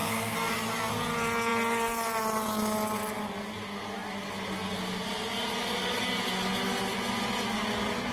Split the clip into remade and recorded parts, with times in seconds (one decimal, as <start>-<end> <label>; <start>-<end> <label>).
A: 0.0-0.5 remade; 0.5-8.1 recorded